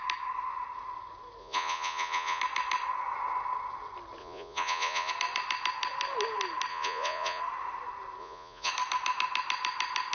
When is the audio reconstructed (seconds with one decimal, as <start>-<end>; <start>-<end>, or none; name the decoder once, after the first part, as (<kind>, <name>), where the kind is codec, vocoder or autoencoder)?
1.4-2.4 (vocoder, Vocos); 4.2-5.1; 6.7-7.4; 8.2-8.7